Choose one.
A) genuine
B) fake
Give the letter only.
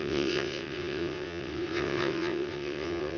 B